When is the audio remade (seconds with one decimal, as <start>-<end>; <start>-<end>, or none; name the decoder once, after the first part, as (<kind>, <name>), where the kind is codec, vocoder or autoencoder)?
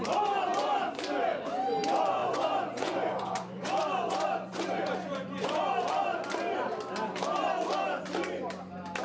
2.2-5.6 (vocoder, Vocos)